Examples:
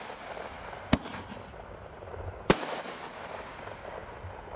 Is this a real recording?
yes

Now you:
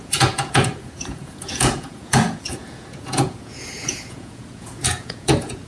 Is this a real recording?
no